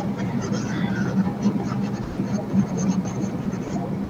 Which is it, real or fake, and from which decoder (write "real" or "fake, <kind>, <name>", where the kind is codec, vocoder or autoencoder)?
real